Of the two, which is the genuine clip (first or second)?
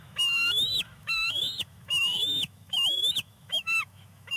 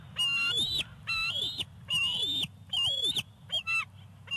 second